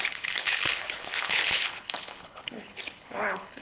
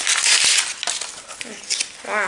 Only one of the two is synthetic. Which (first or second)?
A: first